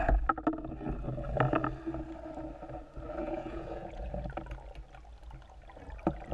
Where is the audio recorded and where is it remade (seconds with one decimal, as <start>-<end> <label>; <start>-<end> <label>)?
0.0-3.2 recorded; 3.2-4.1 remade; 4.1-6.3 recorded